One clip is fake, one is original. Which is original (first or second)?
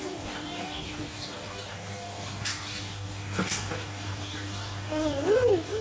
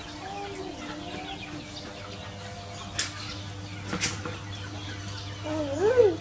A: second